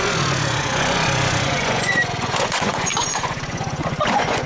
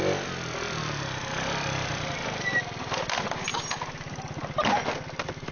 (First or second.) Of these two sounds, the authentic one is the second